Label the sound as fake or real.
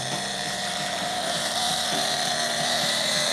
fake